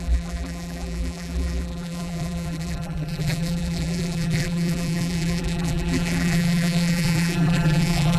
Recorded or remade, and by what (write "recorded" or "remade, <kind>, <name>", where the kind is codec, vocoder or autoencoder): remade, vocoder, BigVGAN v2